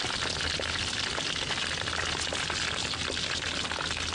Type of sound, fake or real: real